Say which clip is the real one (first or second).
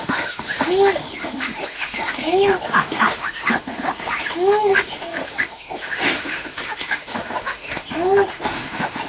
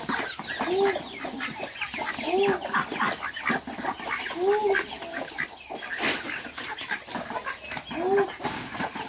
second